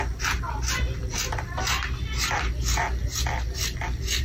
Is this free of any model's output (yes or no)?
yes